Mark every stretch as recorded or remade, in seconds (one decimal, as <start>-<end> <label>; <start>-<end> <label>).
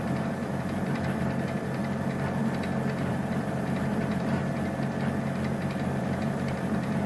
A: 0.0-1.8 remade; 1.8-3.1 recorded; 3.1-4.4 remade; 4.4-6.0 recorded; 6.0-7.1 remade